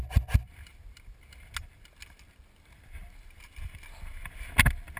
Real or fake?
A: real